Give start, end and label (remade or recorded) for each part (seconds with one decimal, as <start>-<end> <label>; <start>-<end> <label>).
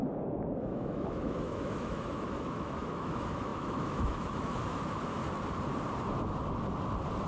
0.0-0.6 recorded; 0.6-5.2 remade; 5.2-7.3 recorded